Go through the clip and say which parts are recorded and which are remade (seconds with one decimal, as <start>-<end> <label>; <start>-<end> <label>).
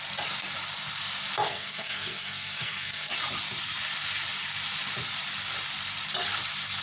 0.0-1.5 recorded; 1.5-3.1 remade; 3.1-6.8 recorded